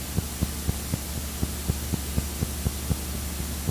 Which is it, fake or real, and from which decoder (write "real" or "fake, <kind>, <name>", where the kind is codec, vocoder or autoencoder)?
real